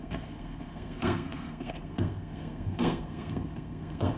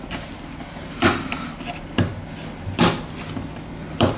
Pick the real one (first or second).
second